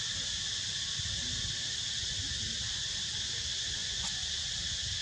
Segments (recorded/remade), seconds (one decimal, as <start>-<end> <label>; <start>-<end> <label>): 0.0-3.8 recorded; 3.8-4.4 remade; 4.4-5.0 recorded